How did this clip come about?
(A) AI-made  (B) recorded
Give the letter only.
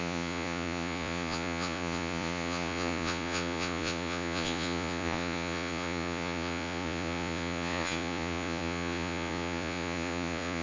A